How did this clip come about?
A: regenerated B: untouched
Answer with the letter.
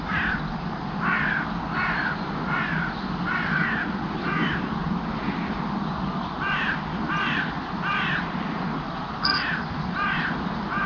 B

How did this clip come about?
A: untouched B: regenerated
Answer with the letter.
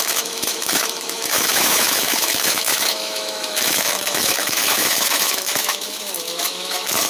B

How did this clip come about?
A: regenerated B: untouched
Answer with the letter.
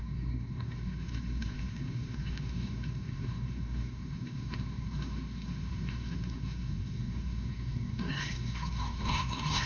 A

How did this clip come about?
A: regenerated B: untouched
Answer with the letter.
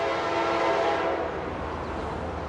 B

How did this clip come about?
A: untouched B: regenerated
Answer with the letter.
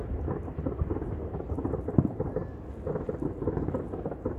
A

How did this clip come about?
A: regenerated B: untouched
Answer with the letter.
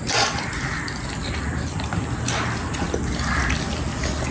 B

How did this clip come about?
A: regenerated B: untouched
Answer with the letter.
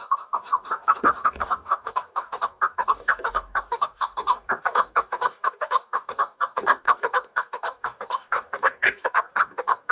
A